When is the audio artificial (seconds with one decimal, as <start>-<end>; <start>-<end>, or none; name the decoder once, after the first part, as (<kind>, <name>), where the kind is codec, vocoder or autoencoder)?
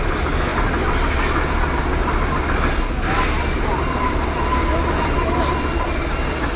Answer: none